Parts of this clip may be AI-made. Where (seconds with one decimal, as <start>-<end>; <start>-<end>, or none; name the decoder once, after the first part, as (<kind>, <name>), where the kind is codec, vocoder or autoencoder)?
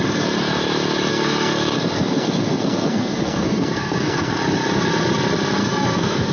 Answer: 1.1-4.3 (codec, SNAC); 5.6-6.3